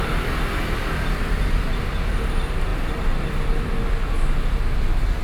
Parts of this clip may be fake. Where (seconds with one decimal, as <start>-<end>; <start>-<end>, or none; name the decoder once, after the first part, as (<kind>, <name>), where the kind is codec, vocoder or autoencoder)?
2.7-3.9 (vocoder, BigVGAN v2)